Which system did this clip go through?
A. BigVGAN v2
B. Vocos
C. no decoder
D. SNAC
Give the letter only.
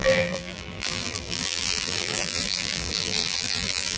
A